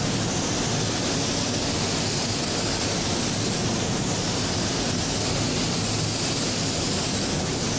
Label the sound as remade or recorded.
recorded